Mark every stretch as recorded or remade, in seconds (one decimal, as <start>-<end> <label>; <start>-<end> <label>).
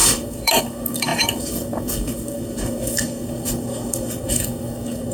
0.0-5.1 remade